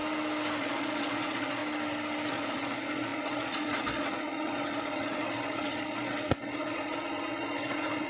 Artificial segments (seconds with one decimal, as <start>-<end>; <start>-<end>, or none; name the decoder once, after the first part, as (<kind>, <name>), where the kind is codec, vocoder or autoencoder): 0.6-1.6 (vocoder, Vocos); 2.3-8.1